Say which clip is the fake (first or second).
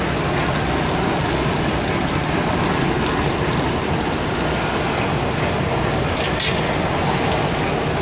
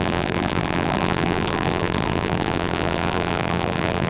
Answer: second